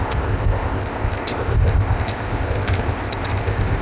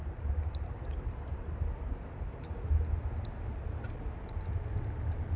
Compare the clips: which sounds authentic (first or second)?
second